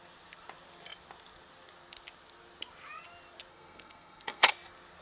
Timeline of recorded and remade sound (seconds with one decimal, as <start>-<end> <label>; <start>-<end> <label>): 0.0-3.5 recorded; 3.5-4.5 remade; 4.5-5.0 recorded